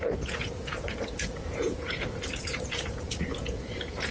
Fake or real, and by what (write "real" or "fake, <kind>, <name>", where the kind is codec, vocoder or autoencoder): fake, vocoder, Vocos